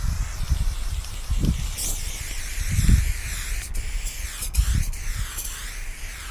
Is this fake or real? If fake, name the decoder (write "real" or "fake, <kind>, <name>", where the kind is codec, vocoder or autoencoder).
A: real